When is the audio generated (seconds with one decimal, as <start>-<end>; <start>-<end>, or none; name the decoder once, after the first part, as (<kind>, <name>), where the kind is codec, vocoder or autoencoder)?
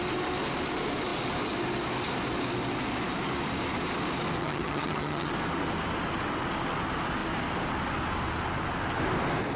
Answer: 4.4-5.3 (vocoder, HiFi-GAN)